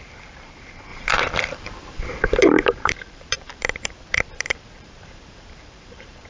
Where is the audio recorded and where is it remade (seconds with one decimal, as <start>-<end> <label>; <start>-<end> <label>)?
0.0-6.3 remade